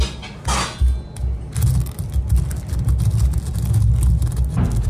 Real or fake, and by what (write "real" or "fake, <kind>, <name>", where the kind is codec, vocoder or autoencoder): real